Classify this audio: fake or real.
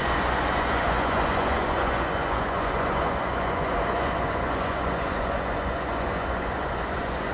fake